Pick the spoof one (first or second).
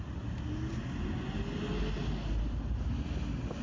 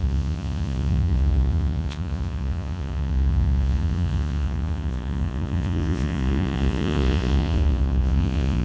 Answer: second